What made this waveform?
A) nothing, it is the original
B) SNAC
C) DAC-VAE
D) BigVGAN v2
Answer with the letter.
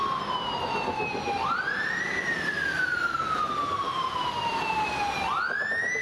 A